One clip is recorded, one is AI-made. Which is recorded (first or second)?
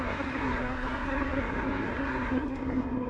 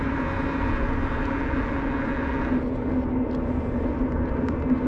second